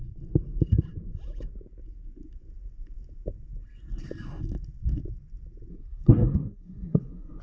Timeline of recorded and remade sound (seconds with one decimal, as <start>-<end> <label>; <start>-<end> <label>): 0.0-5.7 recorded; 5.7-7.4 remade